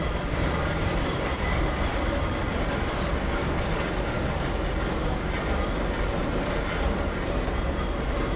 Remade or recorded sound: recorded